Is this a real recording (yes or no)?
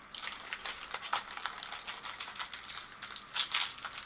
yes